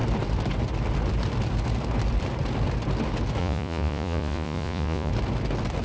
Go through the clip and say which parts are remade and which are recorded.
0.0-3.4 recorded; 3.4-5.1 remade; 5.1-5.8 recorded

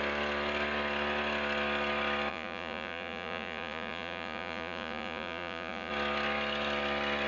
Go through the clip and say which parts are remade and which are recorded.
0.0-2.3 recorded; 2.3-5.9 remade; 5.9-7.3 recorded

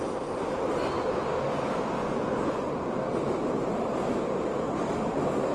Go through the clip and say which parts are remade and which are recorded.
0.0-2.0 recorded; 2.0-2.7 remade; 2.7-5.5 recorded

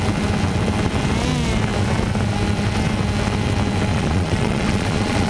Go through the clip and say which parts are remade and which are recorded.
0.0-3.9 recorded; 3.9-5.3 remade

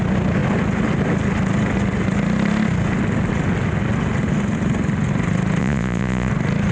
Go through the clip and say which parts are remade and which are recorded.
0.0-5.6 recorded; 5.6-6.3 remade; 6.3-6.7 recorded